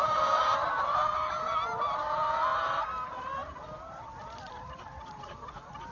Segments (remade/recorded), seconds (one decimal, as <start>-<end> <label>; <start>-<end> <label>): 0.0-5.9 recorded